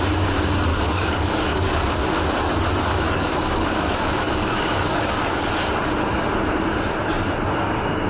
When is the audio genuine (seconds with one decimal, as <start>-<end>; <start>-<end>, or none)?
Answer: 0.0-0.7; 2.0-2.8; 5.5-8.1